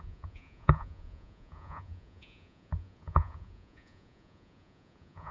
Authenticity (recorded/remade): remade